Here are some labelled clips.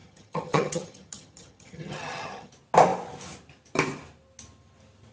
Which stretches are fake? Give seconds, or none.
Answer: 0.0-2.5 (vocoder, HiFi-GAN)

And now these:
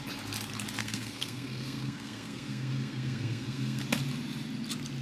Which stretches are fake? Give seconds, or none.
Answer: 0.8-3.8 (codec, SNAC)